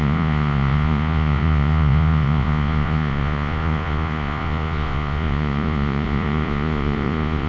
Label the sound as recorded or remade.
remade